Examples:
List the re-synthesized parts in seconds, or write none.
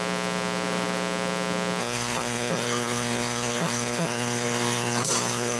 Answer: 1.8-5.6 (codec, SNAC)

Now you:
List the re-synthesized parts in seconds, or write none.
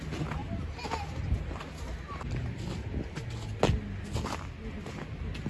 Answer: none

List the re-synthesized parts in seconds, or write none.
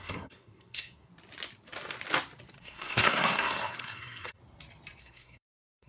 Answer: 0.0-1.1 (codec, SNAC); 2.6-4.4; 5.0-5.9